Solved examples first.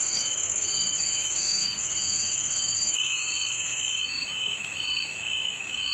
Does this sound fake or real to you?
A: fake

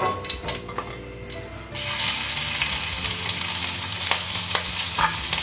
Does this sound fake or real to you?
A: real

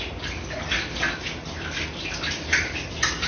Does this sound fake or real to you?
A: real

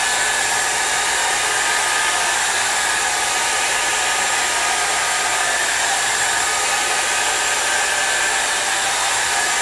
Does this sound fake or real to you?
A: real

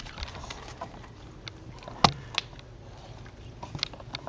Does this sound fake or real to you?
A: real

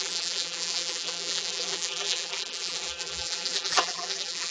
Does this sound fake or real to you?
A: fake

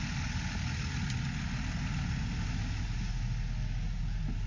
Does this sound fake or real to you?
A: real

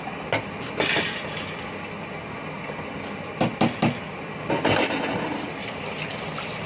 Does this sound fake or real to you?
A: real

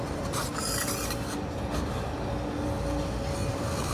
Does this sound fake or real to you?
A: real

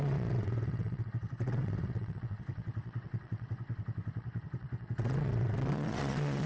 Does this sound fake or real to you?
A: fake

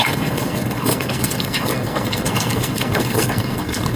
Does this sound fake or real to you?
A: fake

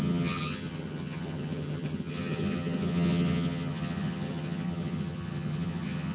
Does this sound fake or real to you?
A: fake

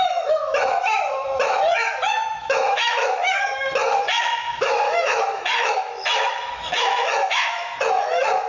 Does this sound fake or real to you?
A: fake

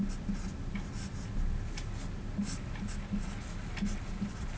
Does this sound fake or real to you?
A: real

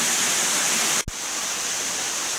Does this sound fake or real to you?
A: real